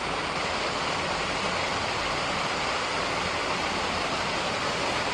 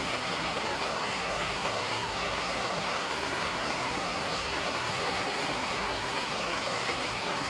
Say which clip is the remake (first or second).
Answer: second